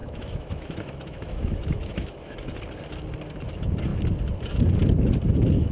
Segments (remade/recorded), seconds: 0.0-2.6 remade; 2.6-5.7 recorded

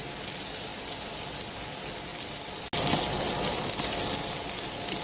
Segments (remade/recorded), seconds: 0.0-5.0 recorded

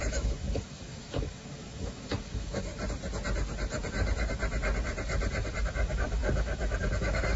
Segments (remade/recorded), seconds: 0.0-2.7 remade; 2.7-5.6 recorded; 5.6-7.4 remade

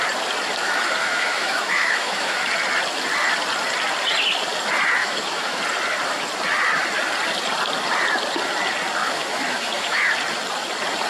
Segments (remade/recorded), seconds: 0.0-0.6 recorded; 0.6-2.5 remade; 2.5-5.0 recorded; 5.0-5.6 remade; 5.6-9.0 recorded; 9.0-10.1 remade; 10.1-11.1 recorded

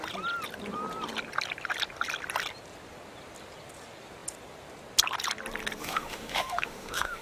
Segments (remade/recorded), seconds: 0.0-5.8 recorded; 5.8-7.2 remade

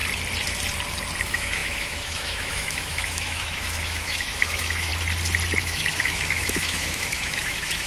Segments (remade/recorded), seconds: 0.0-1.2 recorded; 1.2-4.9 remade; 4.9-5.6 recorded; 5.6-7.9 remade